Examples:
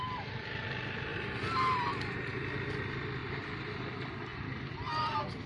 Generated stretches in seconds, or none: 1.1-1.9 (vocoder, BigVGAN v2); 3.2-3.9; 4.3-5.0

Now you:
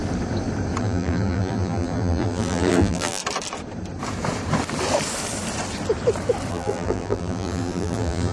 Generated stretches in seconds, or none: 0.8-3.2 (vocoder, BigVGAN v2); 6.5-8.3

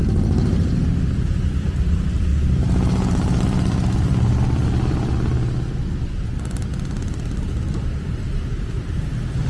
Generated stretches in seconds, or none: 0.0-2.3 (vocoder, BigVGAN v2); 7.5-9.5

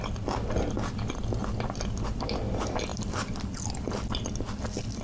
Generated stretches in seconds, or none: 1.4-2.4 (vocoder, BigVGAN v2); 2.9-4.3

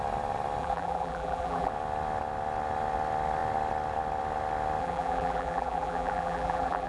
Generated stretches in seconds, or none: 0.6-1.7 (vocoder, BigVGAN v2); 4.8-6.9

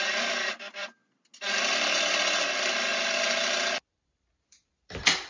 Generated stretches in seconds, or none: 2.9-5.3 (vocoder, BigVGAN v2)

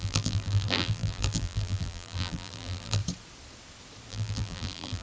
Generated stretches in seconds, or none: 0.0-3.0 (vocoder, BigVGAN v2); 4.1-5.0